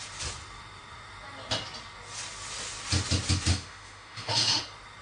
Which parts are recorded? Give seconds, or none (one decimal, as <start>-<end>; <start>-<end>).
0.0-3.5; 4.6-5.0